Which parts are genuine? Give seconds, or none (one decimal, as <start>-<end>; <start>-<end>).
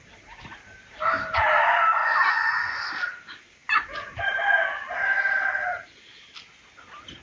0.0-2.0; 2.9-7.2